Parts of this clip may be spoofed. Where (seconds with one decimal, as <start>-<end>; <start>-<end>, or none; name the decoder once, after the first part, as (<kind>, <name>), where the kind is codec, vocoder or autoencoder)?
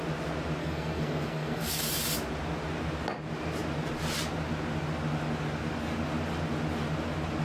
0.6-1.8 (codec, SNAC)